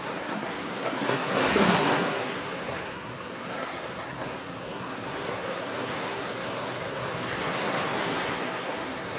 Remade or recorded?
remade